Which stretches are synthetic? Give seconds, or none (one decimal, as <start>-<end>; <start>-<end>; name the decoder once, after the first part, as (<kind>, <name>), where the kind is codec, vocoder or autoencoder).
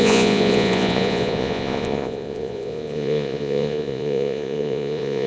0.0-5.3 (vocoder, Vocos)